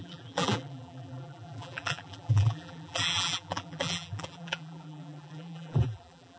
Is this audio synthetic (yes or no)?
yes